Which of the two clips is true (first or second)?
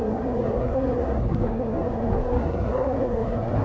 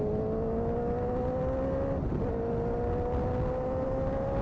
second